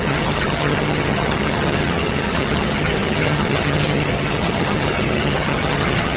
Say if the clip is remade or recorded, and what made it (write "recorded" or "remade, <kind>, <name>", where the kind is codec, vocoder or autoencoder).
remade, vocoder, HiFi-GAN